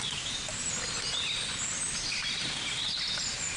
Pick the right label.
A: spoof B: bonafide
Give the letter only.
B